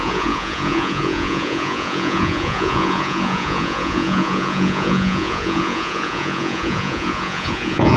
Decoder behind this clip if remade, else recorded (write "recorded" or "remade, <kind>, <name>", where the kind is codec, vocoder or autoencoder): remade, vocoder, Vocos